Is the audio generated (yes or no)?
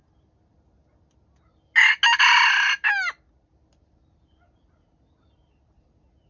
no